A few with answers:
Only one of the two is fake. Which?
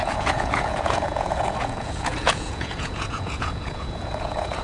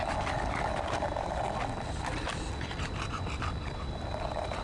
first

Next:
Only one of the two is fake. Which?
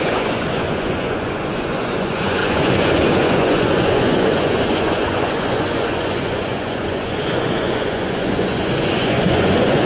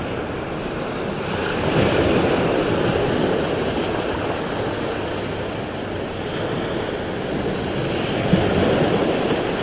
first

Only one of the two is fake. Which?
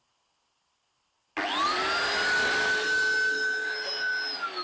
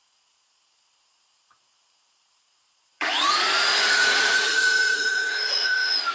second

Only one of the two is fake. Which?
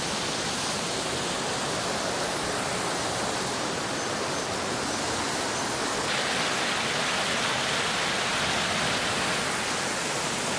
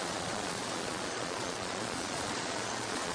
second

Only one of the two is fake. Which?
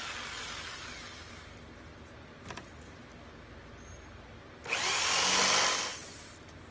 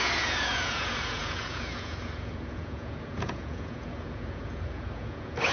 second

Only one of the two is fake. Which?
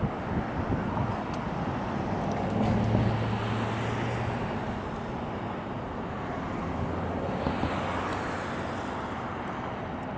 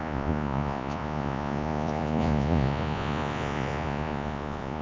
second